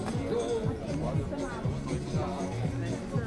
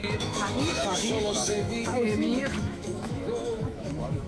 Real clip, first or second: first